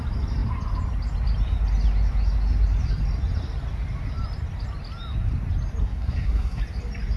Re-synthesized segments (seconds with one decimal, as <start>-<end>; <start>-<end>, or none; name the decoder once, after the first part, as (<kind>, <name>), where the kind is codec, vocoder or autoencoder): 5.8-6.6 (codec, SNAC)